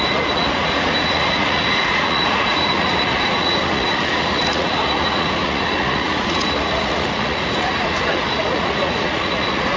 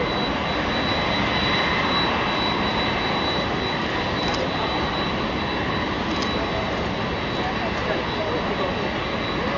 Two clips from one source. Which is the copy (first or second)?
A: first